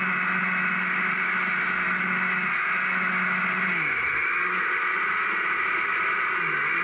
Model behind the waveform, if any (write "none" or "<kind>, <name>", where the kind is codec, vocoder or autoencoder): none